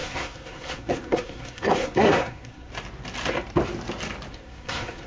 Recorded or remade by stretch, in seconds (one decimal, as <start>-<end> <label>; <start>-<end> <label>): 0.0-2.7 remade; 2.7-4.3 recorded; 4.3-5.1 remade